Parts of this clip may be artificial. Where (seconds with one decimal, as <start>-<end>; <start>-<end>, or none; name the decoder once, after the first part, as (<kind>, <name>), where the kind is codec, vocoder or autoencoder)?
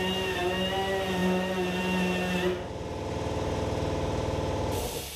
none